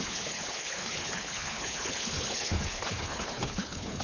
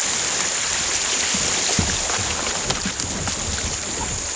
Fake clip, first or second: first